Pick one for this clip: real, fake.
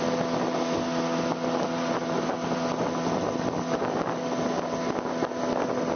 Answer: real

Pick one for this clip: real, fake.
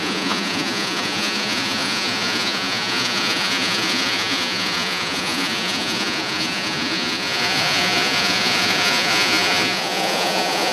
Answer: fake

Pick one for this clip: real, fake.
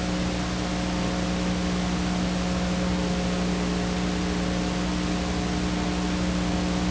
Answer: real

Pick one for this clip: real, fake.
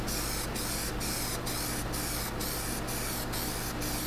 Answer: real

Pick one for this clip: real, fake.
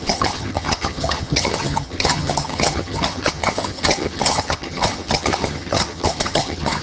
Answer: fake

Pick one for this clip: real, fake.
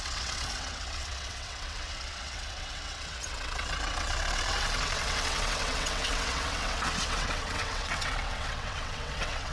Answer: fake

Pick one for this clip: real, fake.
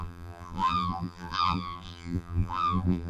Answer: fake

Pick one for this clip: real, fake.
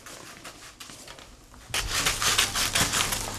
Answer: real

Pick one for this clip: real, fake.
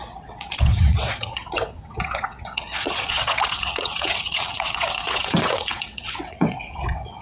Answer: fake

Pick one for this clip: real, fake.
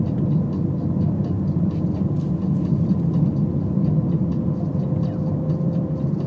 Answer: real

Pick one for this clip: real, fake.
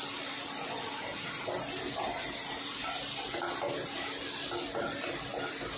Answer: real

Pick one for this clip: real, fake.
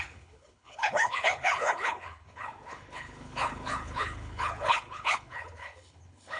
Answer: fake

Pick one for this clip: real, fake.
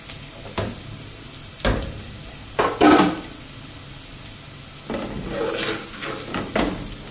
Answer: real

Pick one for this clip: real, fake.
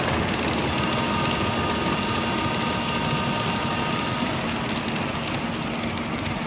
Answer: real